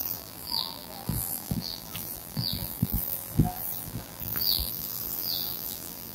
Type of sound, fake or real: fake